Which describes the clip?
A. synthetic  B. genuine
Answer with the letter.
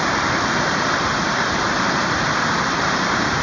A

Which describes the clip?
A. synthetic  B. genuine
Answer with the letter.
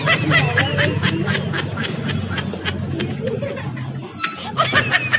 B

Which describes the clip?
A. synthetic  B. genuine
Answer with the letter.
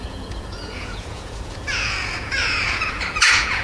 A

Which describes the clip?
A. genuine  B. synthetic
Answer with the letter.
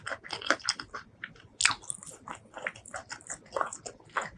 A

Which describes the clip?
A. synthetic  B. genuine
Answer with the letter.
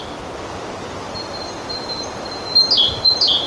B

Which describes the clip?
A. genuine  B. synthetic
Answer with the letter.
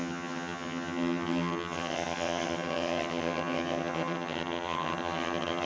B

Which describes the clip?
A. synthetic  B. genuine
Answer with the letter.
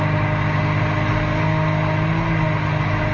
B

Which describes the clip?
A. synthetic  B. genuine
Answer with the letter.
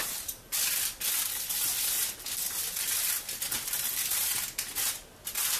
B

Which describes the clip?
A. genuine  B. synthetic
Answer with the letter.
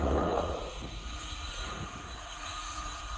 B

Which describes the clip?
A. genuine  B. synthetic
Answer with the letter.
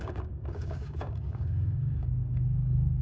B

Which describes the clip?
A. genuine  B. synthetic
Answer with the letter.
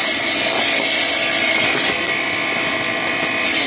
B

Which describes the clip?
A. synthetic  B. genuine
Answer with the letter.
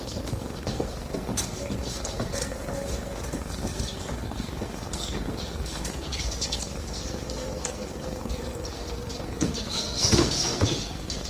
A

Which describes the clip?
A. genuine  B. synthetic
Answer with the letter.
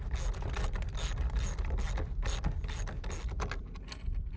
A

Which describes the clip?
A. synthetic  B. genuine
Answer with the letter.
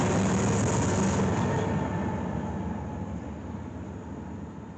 B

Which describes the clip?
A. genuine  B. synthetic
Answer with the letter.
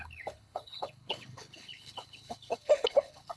B